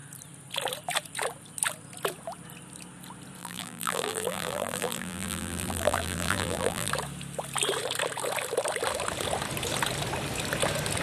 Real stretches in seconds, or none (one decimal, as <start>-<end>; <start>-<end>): 0.0-3.4; 6.9-11.0